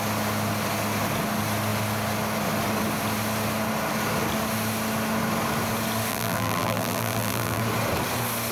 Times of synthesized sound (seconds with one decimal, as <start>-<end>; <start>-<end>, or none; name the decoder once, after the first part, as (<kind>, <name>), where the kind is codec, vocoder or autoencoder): 6.1-7.6 (vocoder, BigVGAN v2)